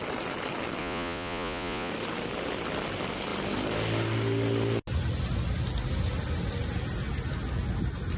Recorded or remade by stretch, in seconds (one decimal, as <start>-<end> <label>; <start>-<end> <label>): 0.0-0.8 recorded; 0.8-1.9 remade; 1.9-8.2 recorded